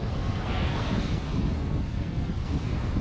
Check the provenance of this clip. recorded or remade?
remade